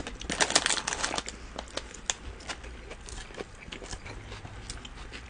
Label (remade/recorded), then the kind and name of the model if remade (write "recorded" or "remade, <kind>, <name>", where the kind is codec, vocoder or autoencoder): recorded